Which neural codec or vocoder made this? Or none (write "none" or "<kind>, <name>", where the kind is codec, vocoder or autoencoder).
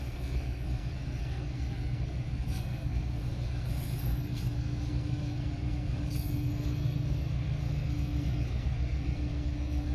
codec, SNAC